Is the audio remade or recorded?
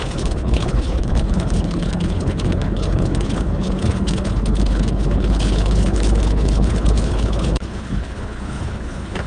remade